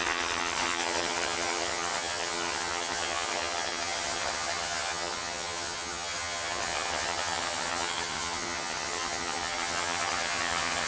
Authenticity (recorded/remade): remade